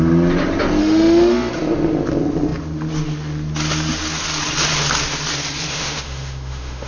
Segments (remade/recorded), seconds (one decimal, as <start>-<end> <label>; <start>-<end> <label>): 0.0-0.8 recorded; 0.8-1.5 remade; 1.5-5.7 recorded; 5.7-6.9 remade